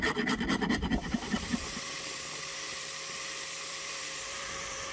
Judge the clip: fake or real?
fake